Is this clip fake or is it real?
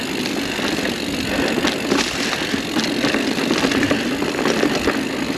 fake